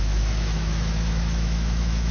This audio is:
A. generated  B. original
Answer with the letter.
A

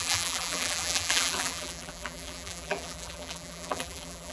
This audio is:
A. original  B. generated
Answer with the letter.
B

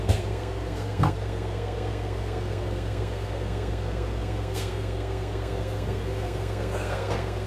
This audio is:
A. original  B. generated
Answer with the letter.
B